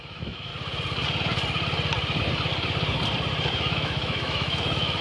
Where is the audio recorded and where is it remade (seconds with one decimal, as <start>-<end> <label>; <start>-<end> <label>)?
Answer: 0.0-0.5 remade; 0.5-3.5 recorded; 3.5-5.0 remade